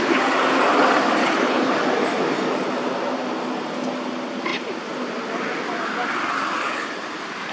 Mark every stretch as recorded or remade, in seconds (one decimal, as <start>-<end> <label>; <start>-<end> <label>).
0.0-1.2 recorded; 1.2-1.7 remade; 1.7-7.5 recorded

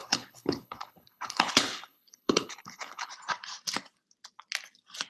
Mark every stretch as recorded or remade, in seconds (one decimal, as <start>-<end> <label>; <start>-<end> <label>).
0.0-3.1 remade; 3.1-5.1 recorded

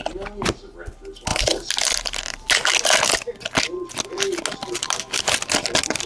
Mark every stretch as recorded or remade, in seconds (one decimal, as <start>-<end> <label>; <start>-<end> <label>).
0.0-6.1 recorded